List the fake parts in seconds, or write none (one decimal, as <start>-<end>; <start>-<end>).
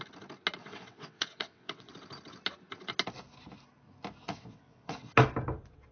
0.6-1.9; 4.2-5.1